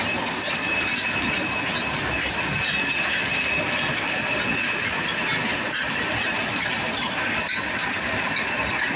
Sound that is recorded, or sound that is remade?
recorded